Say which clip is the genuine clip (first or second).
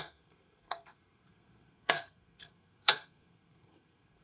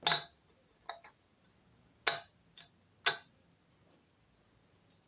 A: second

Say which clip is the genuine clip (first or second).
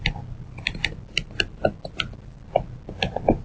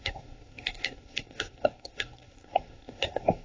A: first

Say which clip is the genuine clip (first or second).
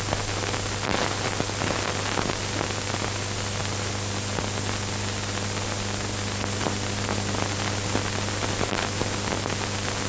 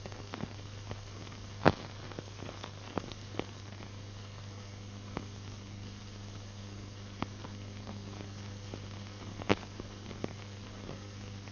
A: first